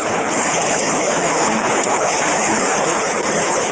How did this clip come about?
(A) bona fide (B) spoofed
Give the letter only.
B